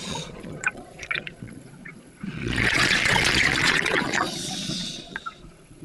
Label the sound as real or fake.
fake